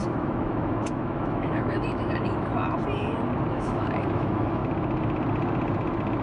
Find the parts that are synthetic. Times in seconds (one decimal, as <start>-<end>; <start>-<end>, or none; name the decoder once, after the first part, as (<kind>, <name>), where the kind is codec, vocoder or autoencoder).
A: 0.0-2.5 (autoencoder, DAC-VAE); 3.5-4.6